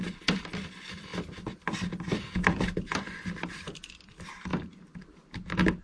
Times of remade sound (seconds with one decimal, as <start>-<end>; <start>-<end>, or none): 1.1-4.1